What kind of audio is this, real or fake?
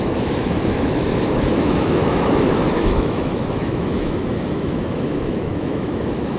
fake